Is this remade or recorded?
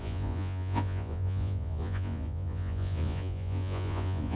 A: remade